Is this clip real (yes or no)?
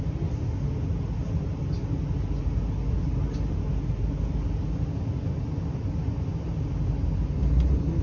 yes